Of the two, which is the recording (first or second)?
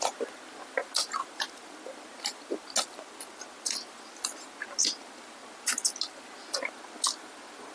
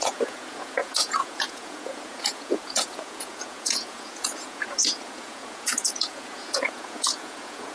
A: first